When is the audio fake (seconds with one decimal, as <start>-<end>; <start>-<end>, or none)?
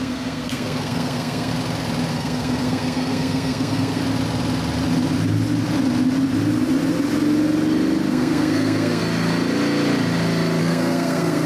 0.0-1.5; 2.1-4.0; 8.1-9.0; 10.6-11.5